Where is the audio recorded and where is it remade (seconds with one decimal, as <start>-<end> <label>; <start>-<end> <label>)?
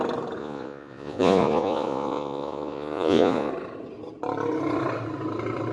0.0-0.4 recorded; 0.4-3.5 remade; 3.5-5.7 recorded